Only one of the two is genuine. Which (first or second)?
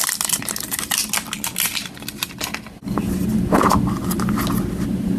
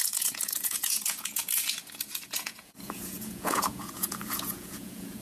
first